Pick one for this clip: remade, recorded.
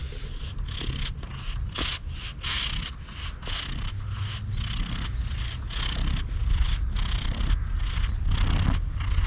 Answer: recorded